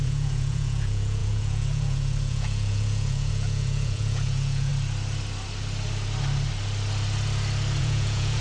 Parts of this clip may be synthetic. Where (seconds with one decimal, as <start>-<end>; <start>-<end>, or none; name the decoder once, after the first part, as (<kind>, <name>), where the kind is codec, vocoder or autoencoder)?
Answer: 0.0-4.7 (vocoder, Vocos); 7.8-8.4